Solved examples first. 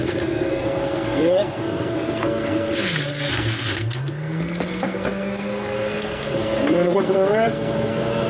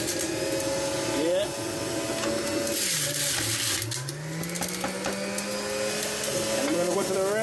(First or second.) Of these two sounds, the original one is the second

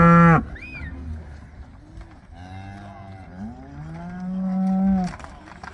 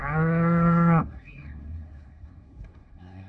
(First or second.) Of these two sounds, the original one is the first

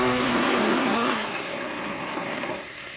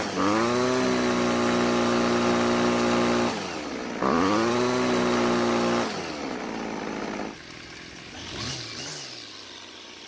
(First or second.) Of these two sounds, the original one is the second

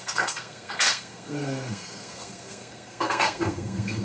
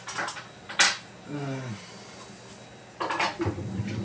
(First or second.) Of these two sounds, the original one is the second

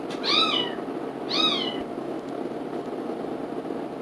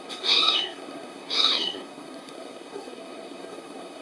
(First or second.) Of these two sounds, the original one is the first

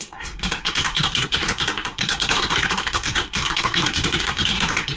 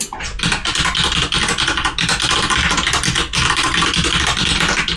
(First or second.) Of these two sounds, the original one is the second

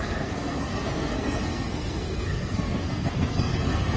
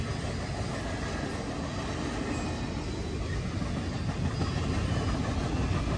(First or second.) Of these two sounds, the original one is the second